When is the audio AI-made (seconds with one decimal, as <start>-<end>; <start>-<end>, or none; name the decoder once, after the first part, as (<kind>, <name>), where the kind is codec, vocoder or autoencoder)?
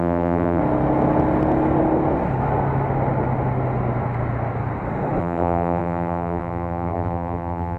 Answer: 0.0-0.6 (vocoder, BigVGAN v2); 5.2-7.8